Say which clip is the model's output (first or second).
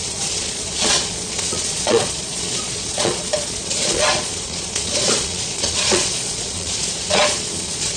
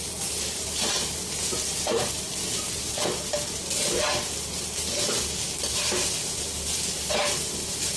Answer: first